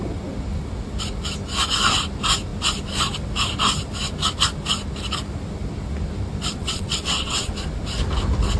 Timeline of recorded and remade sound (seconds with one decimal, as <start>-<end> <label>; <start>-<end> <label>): 0.0-6.6 recorded; 6.6-7.5 remade; 7.5-8.6 recorded